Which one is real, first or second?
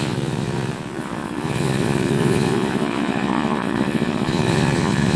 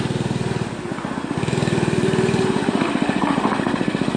second